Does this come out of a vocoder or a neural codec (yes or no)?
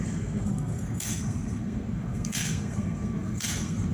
yes